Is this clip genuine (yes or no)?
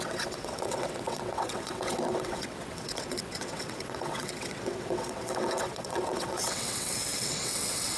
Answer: no